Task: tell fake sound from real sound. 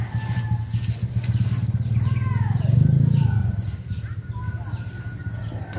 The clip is real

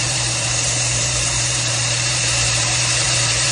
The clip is fake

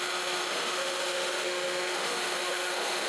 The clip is fake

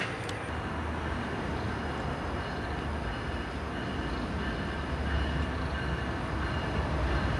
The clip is real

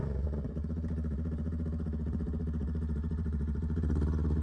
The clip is fake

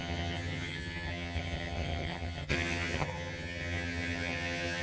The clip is fake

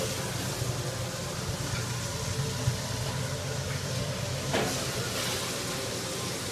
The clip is real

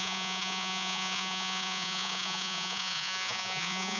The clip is fake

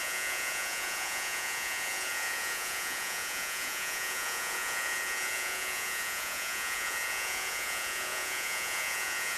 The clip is fake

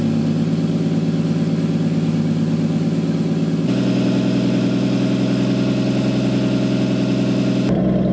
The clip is real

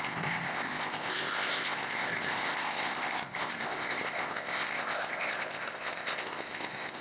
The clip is fake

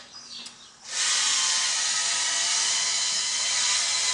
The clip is real